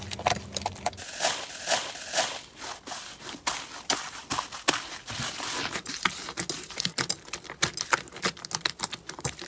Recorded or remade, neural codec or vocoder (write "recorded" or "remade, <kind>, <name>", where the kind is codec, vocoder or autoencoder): recorded